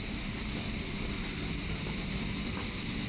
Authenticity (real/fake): real